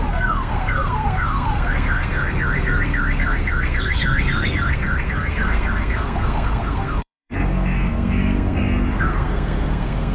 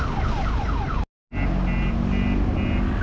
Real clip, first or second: second